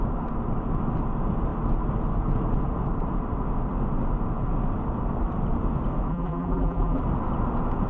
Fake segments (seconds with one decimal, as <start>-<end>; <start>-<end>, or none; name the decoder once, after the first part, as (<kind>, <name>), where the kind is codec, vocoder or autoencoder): 6.1-7.0 (vocoder, BigVGAN v2)